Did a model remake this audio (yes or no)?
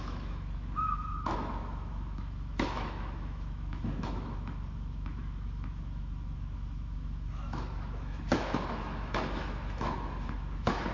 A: yes